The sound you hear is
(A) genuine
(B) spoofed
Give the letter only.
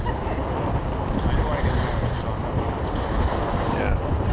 A